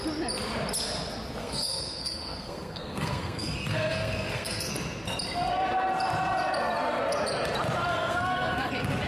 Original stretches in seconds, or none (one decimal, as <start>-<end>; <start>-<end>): 0.0-1.4; 4.7-7.9; 8.7-9.1